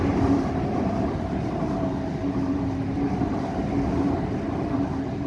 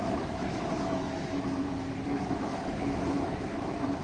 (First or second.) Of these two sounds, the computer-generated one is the second